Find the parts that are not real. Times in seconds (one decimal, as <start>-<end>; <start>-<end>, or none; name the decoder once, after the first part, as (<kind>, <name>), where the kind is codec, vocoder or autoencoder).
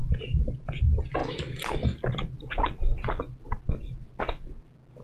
0.0-0.5 (vocoder, BigVGAN v2)